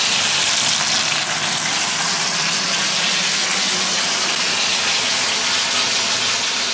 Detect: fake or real real